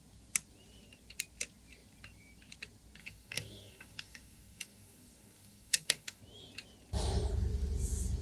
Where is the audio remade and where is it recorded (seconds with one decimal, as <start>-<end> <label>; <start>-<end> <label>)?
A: 0.0-3.0 recorded; 3.0-6.2 remade; 6.2-8.2 recorded